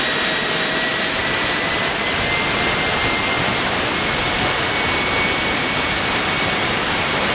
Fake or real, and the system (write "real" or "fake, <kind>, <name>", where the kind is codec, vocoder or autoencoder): real